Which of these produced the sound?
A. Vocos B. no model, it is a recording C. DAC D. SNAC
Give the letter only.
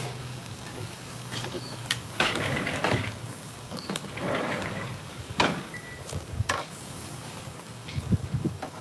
C